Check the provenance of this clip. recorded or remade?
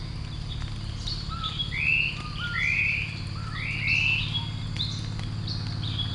recorded